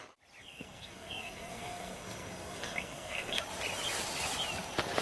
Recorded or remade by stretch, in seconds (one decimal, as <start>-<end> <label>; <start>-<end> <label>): 0.0-0.4 recorded; 0.4-3.4 remade; 3.4-5.0 recorded